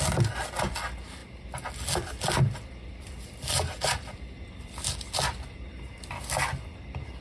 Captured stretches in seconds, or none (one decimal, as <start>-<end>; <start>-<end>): 0.0-7.2